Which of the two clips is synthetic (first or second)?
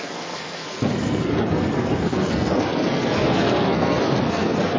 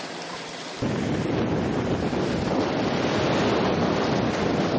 first